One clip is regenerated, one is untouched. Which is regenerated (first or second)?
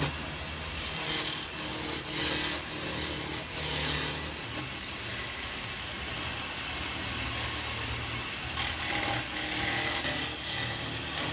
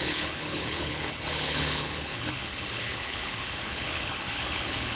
second